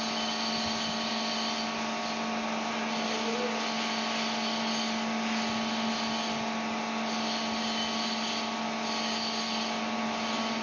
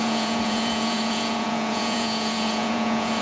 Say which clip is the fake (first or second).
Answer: second